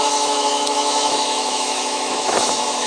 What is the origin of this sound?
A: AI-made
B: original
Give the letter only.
A